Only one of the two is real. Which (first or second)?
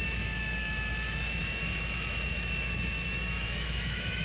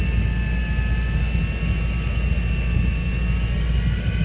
second